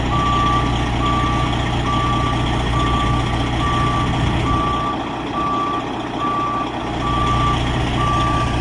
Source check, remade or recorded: recorded